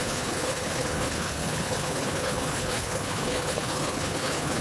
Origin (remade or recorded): remade